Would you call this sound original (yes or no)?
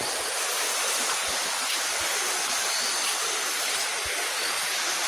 yes